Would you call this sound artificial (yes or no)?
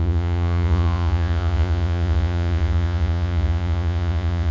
yes